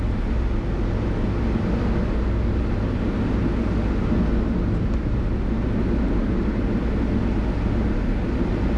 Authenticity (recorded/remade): recorded